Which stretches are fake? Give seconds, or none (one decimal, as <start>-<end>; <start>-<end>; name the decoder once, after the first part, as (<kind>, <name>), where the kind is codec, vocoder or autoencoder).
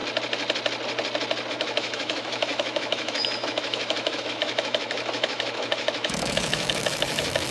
1.5-7.5 (autoencoder, DAC-VAE)